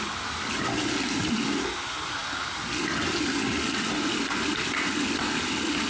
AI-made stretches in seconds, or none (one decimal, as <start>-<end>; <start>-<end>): none